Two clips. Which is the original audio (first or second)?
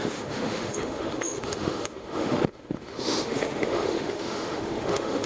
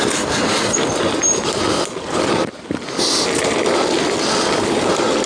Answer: second